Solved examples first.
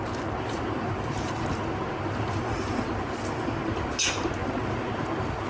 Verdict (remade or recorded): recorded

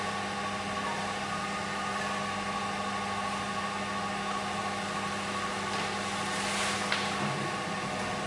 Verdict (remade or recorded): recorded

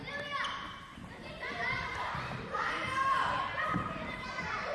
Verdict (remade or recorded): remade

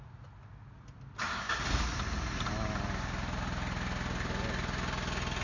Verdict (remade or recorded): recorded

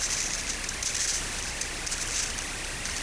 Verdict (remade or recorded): recorded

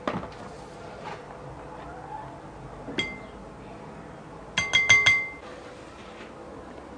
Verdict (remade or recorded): recorded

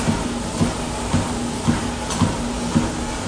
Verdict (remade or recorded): recorded